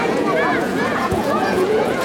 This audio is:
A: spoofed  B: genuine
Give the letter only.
A